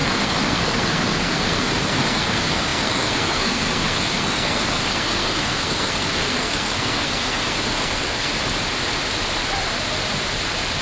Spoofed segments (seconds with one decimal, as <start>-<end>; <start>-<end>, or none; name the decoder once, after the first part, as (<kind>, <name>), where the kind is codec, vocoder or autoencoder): 0.0-8.3 (codec, SNAC)

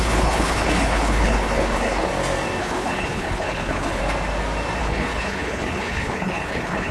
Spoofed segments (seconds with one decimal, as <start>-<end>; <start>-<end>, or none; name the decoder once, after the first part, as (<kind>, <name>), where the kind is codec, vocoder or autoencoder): 0.0-2.1 (codec, HILCodec); 2.6-4.0; 4.8-6.9